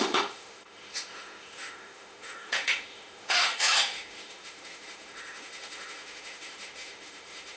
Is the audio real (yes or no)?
no